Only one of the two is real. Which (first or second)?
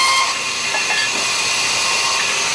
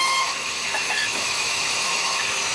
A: first